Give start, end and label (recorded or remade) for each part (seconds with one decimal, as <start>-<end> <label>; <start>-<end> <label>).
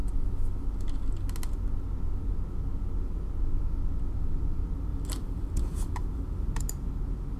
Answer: 0.0-4.9 recorded; 4.9-6.6 remade; 6.6-7.4 recorded